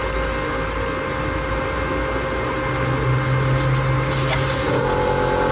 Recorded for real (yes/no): yes